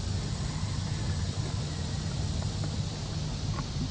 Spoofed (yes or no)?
no